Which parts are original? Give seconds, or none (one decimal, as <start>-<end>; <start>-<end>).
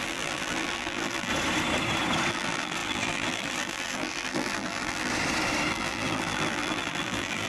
1.3-2.3; 5.1-5.7